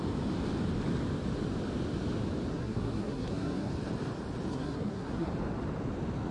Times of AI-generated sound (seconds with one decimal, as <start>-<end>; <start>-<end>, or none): 2.5-3.7; 4.5-5.3